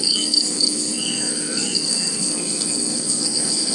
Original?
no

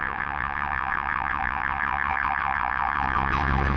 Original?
no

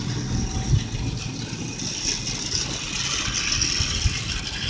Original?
yes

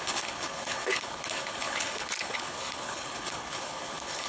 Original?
no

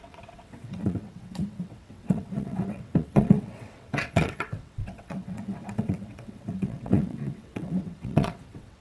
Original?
no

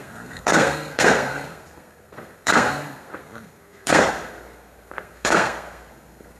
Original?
no